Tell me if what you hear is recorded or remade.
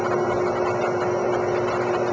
recorded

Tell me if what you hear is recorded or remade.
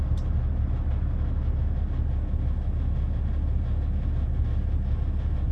recorded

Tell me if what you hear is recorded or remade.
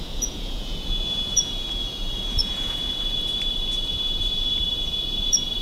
remade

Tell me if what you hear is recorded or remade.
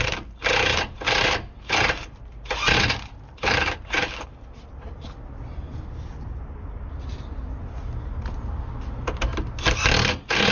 recorded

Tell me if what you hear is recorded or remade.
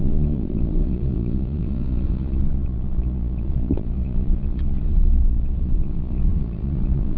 remade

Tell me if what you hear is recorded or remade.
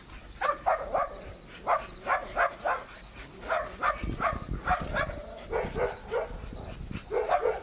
recorded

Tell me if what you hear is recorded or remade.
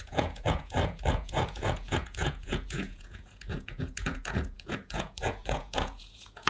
remade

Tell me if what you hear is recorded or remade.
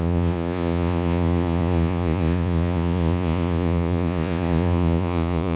remade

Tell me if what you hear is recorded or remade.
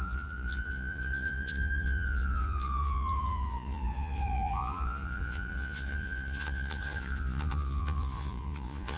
remade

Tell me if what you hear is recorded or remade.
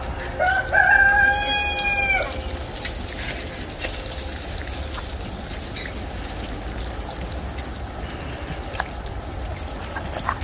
recorded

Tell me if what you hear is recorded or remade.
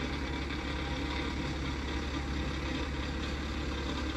recorded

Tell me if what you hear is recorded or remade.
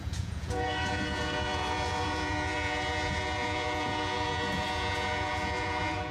remade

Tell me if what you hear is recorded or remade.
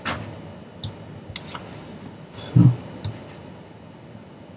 recorded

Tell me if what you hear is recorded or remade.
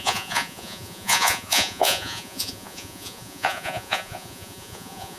remade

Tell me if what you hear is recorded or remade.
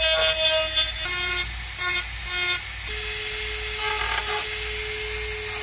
recorded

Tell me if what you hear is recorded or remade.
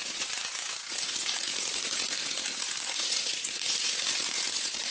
remade